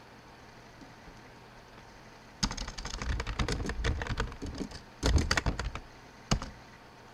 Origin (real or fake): real